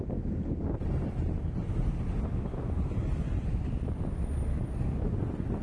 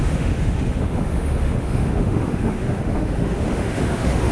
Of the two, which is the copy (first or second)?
second